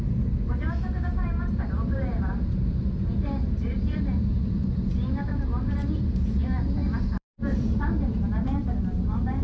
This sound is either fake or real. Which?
fake